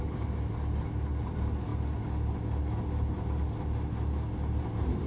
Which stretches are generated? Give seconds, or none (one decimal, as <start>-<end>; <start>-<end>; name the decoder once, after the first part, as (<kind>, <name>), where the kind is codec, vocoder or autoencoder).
none